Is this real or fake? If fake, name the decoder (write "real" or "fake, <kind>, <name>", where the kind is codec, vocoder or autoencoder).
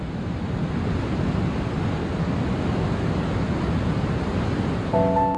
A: real